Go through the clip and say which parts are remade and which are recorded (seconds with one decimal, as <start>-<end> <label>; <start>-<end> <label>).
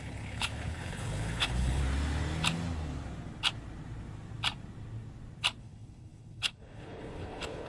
0.0-1.8 remade; 1.8-5.6 recorded; 5.6-7.7 remade